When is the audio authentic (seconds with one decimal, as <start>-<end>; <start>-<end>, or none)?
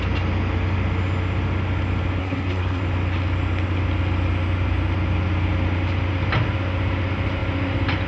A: 0.0-2.2; 2.8-8.1